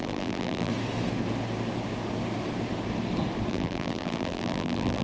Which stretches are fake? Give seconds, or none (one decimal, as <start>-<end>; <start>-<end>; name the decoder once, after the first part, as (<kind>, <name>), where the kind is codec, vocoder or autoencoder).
0.0-0.7 (vocoder, BigVGAN v2); 3.5-5.0